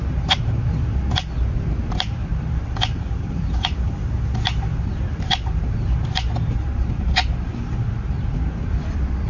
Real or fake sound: fake